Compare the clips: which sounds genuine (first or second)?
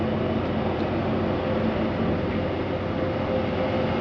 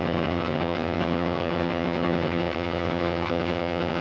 first